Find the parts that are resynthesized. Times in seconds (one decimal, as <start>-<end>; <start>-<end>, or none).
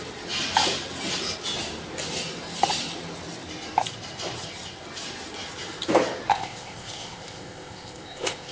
6.3-8.5